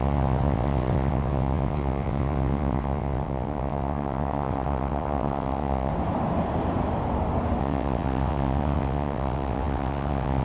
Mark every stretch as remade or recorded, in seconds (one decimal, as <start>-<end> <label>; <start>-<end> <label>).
0.0-5.9 remade; 5.9-7.6 recorded; 7.6-10.4 remade